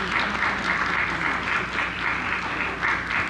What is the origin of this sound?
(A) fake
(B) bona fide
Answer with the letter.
B